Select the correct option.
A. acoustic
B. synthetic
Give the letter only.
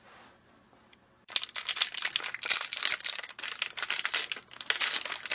A